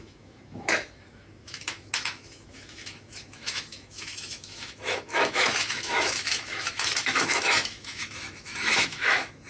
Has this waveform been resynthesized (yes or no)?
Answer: yes